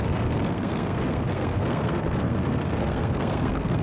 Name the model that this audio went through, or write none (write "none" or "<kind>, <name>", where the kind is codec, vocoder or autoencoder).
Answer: codec, SNAC